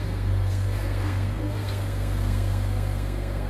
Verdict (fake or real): fake